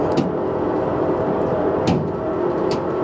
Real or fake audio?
fake